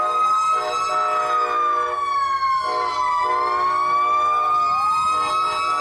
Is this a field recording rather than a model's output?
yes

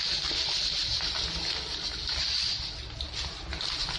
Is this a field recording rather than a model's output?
yes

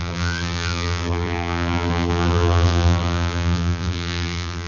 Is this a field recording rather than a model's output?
no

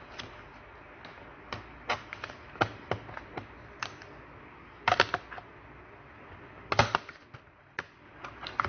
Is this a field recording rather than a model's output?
yes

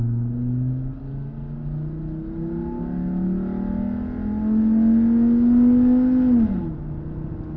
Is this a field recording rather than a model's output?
yes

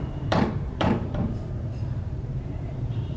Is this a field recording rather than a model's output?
no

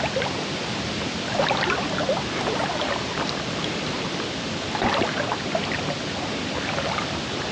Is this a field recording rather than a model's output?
yes